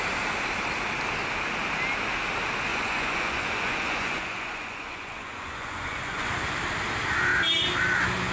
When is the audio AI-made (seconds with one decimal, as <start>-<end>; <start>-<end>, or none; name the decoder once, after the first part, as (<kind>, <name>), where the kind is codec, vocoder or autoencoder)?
2.7-6.3 (vocoder, Vocos)